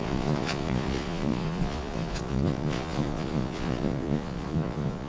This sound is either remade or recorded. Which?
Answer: remade